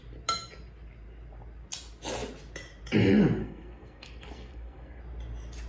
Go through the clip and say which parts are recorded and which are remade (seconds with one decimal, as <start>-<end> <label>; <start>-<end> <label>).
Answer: 0.0-3.4 recorded; 3.4-5.0 remade; 5.0-5.7 recorded